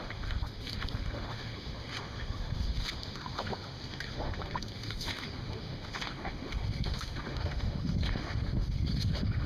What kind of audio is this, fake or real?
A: fake